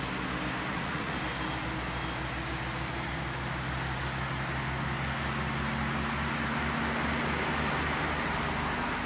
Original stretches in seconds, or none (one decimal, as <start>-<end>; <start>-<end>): 0.0-0.7; 1.2-9.1